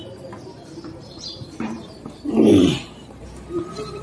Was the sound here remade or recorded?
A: remade